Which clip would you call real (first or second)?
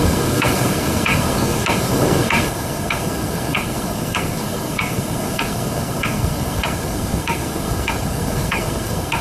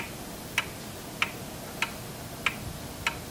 second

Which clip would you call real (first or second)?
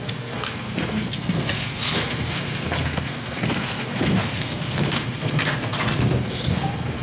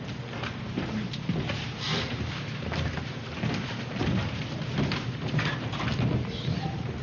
second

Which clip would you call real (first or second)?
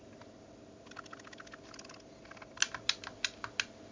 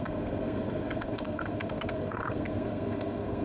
first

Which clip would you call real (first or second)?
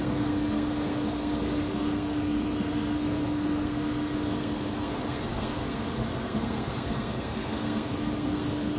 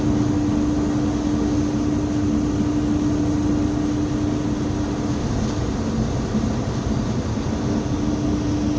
second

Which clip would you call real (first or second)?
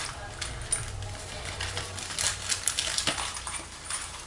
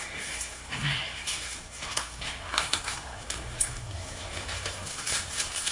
first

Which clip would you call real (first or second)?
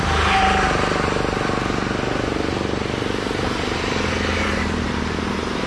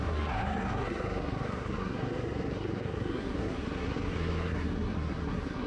first